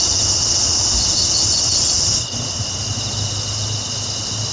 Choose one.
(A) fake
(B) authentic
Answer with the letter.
B